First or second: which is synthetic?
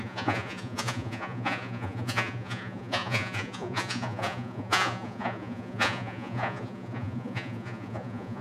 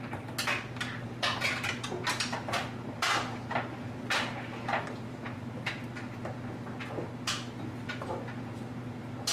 first